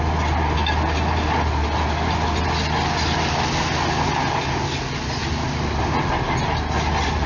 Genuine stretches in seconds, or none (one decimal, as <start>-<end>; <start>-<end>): 0.0-7.3